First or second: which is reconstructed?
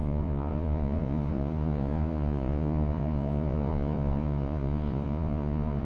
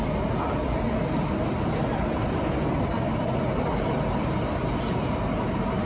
first